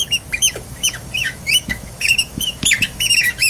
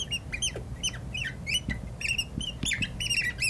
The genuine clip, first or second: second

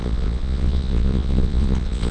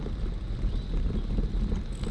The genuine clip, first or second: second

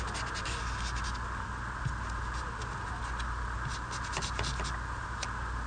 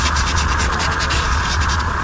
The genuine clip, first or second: first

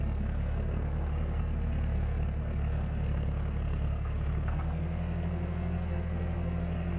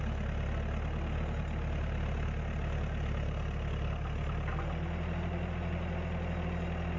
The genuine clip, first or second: second